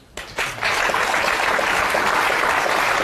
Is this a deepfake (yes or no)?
no